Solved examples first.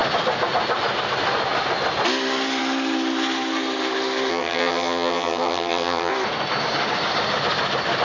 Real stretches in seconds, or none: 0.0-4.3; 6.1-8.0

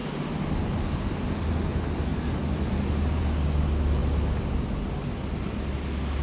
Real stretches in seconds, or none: 0.0-6.2

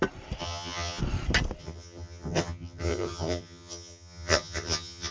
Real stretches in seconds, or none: 0.0-0.4; 1.0-1.6